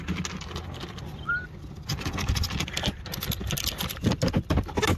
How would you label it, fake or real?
real